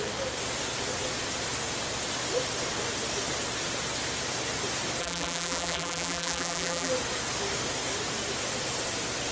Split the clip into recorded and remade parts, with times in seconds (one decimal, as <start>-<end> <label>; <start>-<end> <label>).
0.0-5.0 recorded; 5.0-6.9 remade; 6.9-9.3 recorded